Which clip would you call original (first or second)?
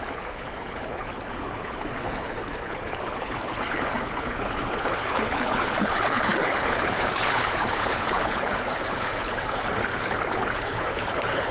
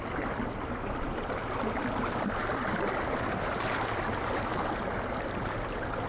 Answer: second